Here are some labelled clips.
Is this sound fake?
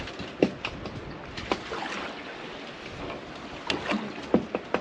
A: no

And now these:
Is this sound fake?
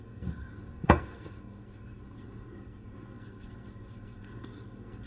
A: yes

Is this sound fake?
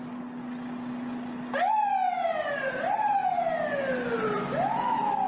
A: no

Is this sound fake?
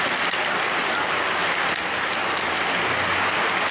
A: no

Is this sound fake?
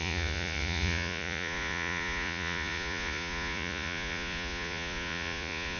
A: yes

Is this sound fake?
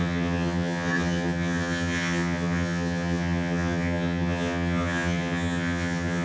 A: yes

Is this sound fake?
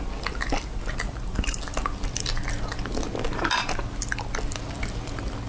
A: no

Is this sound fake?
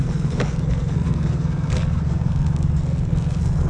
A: yes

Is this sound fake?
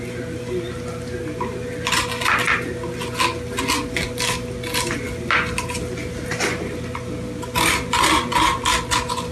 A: no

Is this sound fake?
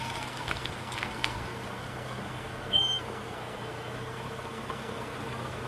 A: yes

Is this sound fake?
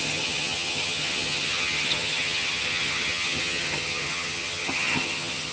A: yes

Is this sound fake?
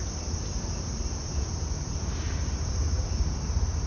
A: yes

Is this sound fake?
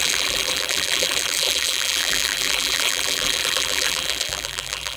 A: yes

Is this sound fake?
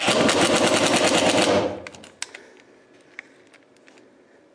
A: no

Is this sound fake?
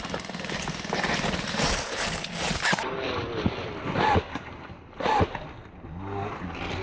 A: no